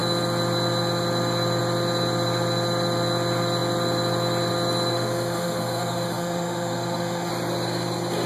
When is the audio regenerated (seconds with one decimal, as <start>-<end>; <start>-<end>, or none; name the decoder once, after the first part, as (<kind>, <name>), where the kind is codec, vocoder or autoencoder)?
4.9-7.3 (autoencoder, DAC-VAE)